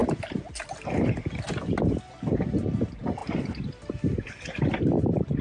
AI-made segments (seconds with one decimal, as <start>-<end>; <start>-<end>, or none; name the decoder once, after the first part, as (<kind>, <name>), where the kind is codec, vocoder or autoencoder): none